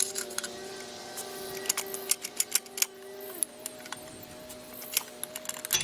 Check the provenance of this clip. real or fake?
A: real